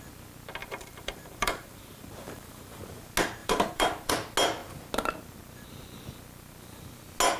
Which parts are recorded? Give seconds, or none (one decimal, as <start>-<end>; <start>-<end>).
0.0-0.6; 2.7-3.4; 4.1-7.4